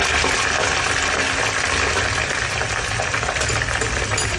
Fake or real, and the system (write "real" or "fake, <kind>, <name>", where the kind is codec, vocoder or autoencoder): real